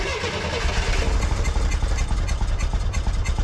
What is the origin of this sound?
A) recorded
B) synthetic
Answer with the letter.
A